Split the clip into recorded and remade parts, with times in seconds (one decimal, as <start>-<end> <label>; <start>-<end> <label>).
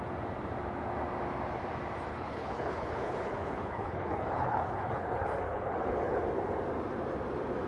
0.0-2.1 recorded; 2.1-6.2 remade; 6.2-7.7 recorded